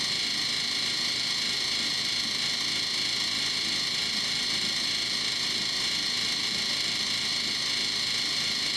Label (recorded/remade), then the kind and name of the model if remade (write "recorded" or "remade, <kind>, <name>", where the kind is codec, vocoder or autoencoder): recorded